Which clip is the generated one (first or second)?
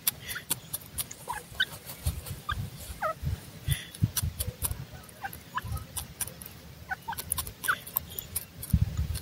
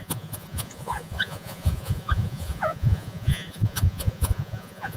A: second